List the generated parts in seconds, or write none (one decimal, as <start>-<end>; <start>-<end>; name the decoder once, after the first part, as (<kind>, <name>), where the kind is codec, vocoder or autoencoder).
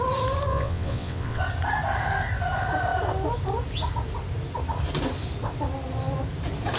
0.5-1.4 (vocoder, WaveNeXt)